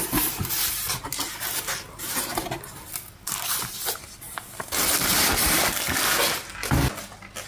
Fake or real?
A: real